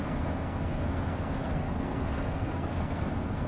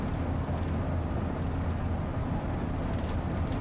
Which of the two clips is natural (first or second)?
second